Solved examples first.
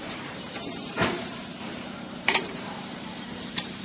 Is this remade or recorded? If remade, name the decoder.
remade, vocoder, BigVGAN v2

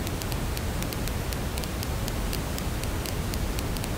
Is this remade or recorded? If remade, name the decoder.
recorded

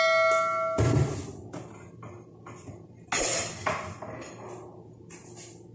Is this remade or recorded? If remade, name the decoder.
recorded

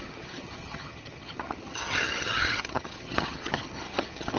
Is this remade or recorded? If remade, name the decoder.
remade, vocoder, HiFi-GAN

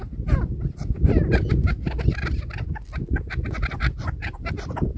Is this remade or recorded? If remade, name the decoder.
recorded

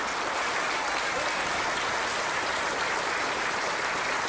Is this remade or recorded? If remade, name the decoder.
recorded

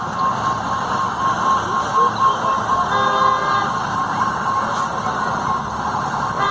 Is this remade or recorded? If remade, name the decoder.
recorded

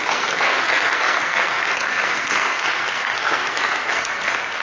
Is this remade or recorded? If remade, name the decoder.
remade, codec, SNAC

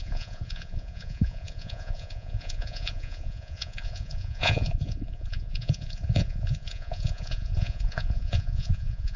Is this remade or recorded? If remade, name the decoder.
remade, vocoder, Vocos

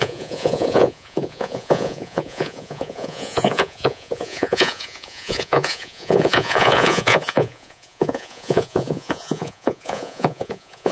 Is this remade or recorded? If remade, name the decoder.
remade, vocoder, Vocos